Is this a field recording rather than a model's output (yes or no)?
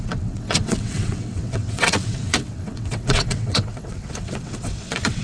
no